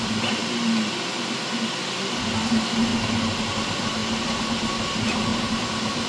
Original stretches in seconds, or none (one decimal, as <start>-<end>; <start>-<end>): 0.0-6.1